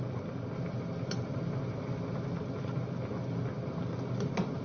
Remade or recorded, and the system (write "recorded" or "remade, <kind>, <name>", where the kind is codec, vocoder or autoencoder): recorded